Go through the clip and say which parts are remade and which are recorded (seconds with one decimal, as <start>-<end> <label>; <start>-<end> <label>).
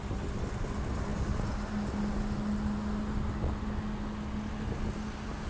0.0-5.5 recorded